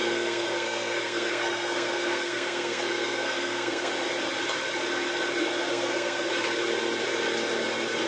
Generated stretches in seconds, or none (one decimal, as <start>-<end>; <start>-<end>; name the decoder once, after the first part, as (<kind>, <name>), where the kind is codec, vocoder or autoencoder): 0.0-3.9 (codec, SNAC); 5.7-6.3